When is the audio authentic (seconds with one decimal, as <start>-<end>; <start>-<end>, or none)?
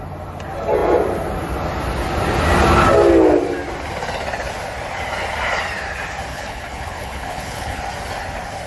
0.0-6.3; 7.8-8.7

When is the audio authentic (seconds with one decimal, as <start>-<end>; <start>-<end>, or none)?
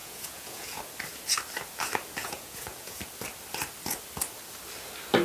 0.8-2.2; 3.0-5.2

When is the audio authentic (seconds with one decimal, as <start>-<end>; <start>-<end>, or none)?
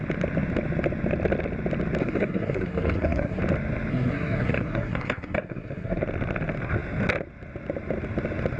0.0-2.0; 3.4-3.9; 6.0-8.6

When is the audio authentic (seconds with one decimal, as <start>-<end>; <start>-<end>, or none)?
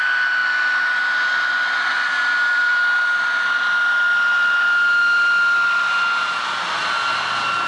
0.0-7.7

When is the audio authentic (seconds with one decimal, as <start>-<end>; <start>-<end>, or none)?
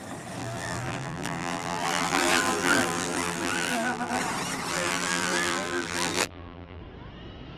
0.0-0.4; 4.2-4.7; 6.8-7.6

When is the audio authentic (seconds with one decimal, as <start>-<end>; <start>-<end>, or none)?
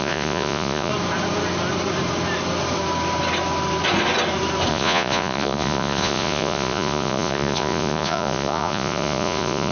0.9-4.7